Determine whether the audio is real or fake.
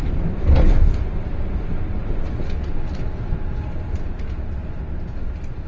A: real